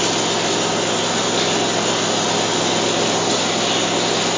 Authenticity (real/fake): real